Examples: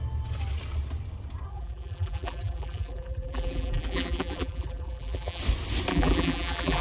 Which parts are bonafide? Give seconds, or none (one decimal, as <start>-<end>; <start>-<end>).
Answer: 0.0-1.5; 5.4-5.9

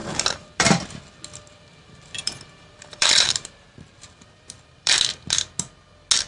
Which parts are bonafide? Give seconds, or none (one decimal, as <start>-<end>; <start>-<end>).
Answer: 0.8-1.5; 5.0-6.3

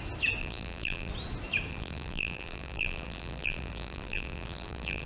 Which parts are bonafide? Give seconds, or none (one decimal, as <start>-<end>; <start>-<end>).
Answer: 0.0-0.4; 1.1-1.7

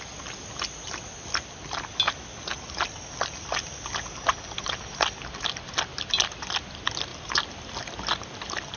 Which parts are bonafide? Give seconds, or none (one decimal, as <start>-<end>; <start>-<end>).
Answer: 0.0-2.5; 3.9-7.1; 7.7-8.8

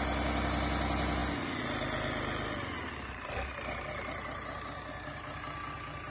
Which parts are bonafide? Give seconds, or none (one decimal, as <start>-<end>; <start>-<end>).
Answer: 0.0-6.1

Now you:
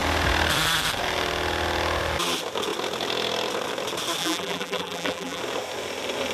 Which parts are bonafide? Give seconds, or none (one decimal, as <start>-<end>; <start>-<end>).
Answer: 0.0-4.2; 5.4-6.3

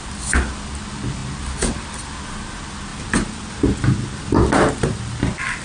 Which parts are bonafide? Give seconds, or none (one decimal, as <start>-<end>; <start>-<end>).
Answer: 0.0-5.6